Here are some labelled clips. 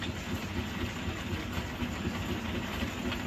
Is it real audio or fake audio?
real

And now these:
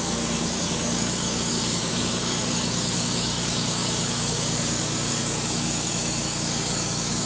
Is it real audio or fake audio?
fake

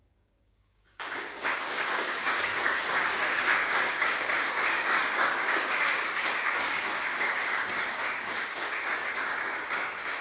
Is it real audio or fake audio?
fake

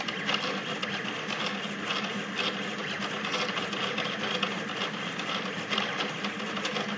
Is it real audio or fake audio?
real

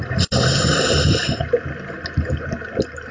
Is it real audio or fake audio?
real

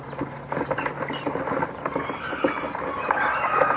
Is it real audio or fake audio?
real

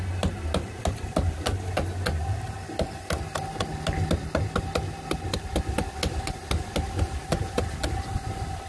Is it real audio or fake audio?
real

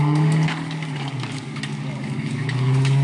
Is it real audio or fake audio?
fake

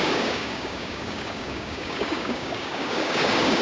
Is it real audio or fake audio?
fake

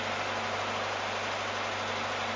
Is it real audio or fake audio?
real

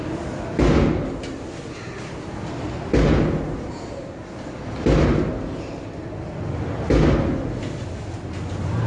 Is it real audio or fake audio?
real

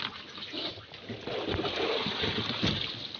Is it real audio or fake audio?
real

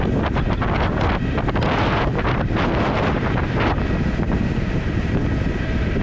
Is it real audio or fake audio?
real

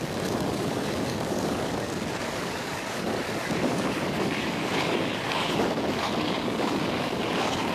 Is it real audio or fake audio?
fake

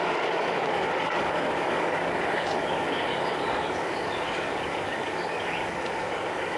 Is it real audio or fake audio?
fake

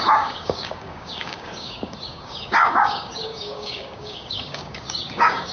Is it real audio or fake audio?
fake